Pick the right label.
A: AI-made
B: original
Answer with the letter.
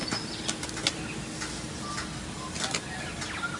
B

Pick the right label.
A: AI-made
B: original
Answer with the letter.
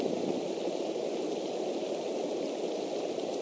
B